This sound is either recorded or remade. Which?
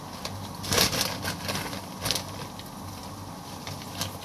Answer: recorded